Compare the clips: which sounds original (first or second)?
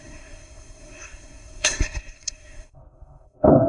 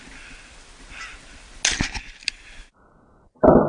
second